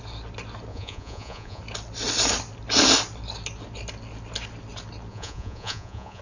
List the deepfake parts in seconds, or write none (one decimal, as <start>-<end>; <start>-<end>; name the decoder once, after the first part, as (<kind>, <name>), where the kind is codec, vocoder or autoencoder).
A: 0.7-1.6 (vocoder, Vocos); 5.1-6.2